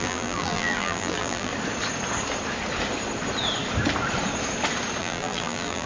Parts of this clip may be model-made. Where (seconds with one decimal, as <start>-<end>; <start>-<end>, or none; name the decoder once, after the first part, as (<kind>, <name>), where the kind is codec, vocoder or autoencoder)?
0.0-1.5 (vocoder, BigVGAN v2); 5.0-5.9